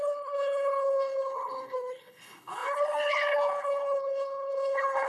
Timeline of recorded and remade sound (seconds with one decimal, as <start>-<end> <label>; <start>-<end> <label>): 0.0-5.1 remade